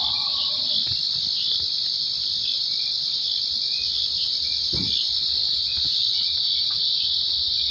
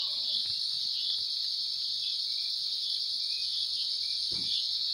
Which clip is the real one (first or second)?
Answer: first